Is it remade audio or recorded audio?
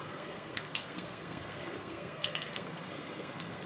remade